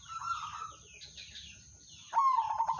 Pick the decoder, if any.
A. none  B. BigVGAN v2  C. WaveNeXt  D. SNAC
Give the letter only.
A